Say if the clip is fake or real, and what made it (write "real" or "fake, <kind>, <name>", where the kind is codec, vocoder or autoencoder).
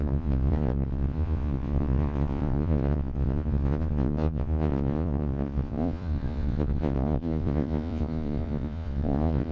fake, vocoder, Vocos